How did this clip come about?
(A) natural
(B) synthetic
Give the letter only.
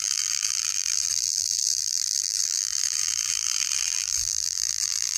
B